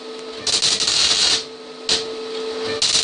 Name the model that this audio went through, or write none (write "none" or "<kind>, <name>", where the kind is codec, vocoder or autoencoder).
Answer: none